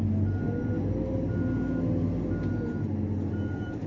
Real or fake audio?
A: real